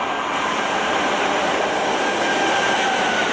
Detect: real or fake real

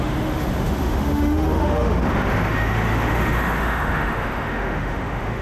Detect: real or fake fake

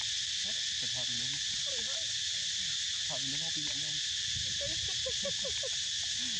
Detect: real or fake real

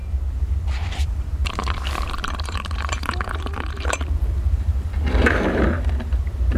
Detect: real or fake fake